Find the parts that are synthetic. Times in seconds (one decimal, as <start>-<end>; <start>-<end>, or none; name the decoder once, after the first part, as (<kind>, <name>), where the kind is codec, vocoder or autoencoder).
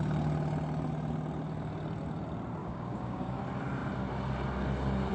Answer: 2.6-3.4 (codec, DAC)